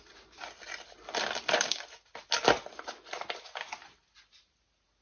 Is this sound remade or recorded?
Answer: recorded